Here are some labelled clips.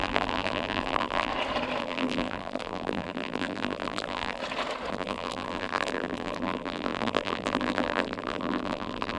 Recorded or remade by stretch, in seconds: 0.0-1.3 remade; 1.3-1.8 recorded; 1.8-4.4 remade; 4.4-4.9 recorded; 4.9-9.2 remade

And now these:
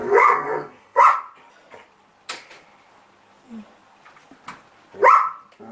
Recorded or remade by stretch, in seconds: 0.0-1.0 remade; 1.0-5.7 recorded

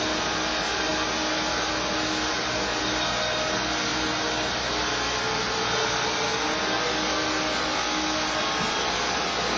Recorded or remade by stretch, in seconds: 0.0-9.6 recorded

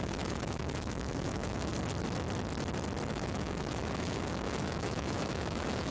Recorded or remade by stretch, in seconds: 0.0-1.7 remade; 1.7-3.1 recorded; 3.1-5.9 remade